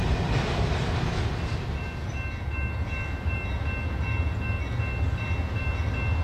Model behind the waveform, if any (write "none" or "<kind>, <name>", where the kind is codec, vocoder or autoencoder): none